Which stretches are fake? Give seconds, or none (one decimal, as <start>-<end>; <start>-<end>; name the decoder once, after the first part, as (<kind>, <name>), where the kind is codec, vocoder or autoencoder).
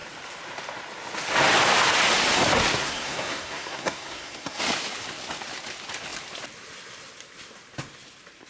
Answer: 2.8-4.6 (codec, SNAC)